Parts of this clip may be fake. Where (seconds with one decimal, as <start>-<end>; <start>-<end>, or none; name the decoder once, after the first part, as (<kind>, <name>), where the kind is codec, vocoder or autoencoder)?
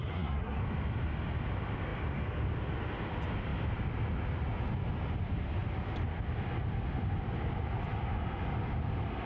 0.0-0.6 (codec, SNAC)